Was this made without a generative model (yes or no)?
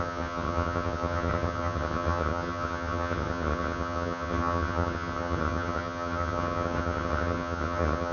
no